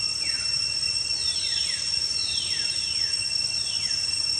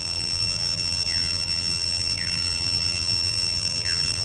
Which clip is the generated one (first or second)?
second